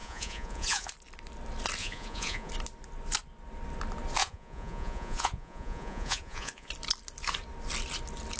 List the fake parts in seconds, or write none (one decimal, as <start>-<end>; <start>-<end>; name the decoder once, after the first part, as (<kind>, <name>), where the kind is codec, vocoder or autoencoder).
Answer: 0.0-0.9 (vocoder, Vocos); 1.8-2.5; 4.2-6.7

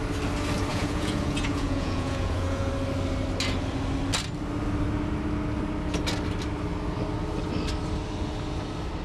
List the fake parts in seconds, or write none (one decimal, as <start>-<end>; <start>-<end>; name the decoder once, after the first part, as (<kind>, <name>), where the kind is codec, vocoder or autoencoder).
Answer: 0.7-2.7 (vocoder, Vocos)

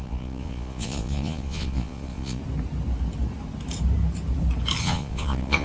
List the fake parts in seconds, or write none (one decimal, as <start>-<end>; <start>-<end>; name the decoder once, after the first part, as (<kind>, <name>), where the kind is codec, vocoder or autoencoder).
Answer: 0.0-2.4 (vocoder, Vocos); 4.8-5.6

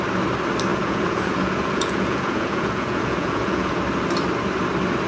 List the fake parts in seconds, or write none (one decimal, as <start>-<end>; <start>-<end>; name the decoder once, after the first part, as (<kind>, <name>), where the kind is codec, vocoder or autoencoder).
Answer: 0.7-3.8 (vocoder, Vocos)

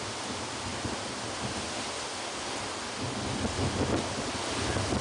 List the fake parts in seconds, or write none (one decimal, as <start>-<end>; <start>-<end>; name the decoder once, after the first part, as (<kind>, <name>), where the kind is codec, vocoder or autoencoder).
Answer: none

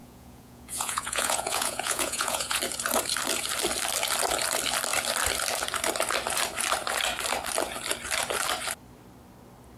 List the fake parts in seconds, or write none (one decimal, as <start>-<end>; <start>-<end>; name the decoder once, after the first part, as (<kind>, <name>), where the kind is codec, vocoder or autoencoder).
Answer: 0.0-2.6 (vocoder, Vocos)

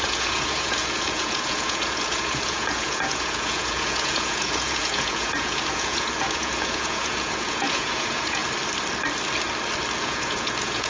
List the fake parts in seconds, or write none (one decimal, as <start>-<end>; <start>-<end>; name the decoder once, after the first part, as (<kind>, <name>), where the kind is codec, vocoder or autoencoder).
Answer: 0.0-8.4 (vocoder, Vocos); 10.0-10.9